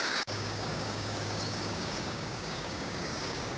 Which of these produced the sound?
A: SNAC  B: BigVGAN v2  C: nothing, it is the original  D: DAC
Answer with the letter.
D